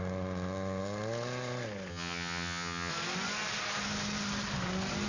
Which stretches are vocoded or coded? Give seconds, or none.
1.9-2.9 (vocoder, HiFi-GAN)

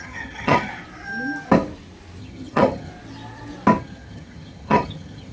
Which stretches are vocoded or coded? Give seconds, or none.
0.0-0.7 (vocoder, HiFi-GAN); 2.2-2.9; 3.8-5.3

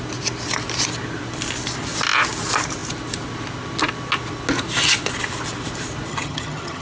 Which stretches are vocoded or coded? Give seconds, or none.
6.1-6.8 (vocoder, HiFi-GAN)

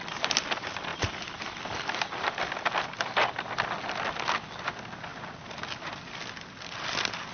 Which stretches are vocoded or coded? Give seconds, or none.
none

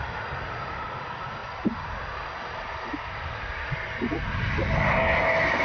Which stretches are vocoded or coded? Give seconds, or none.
none

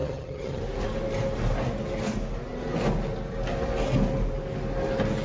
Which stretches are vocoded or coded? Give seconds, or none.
0.0-0.6 (vocoder, HiFi-GAN)